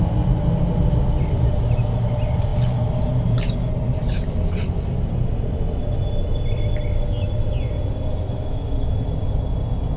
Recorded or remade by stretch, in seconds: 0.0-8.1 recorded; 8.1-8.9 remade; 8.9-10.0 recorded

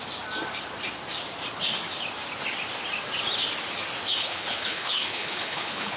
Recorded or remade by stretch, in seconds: 0.0-4.2 recorded; 4.2-6.0 remade

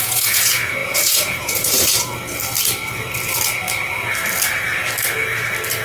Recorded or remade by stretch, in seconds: 0.0-2.1 remade; 2.1-5.8 recorded

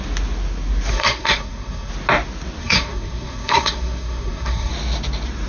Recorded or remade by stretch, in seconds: 0.0-0.9 recorded; 0.9-1.9 remade; 1.9-2.6 recorded; 2.6-4.7 remade; 4.7-5.5 recorded

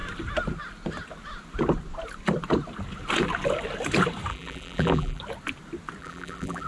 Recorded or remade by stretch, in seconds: 0.0-4.3 recorded; 4.3-5.2 remade; 5.2-6.0 recorded; 6.0-6.7 remade

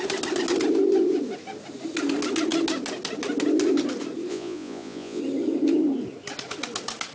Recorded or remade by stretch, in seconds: 0.0-4.3 recorded; 4.3-5.2 remade; 5.2-7.1 recorded

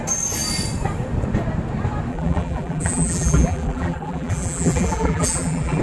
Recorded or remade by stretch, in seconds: 0.0-2.1 recorded; 2.1-5.8 remade